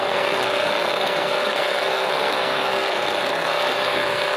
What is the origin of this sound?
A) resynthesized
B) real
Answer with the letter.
A